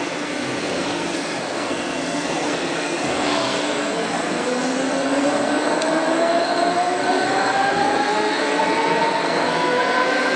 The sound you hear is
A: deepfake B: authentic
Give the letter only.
A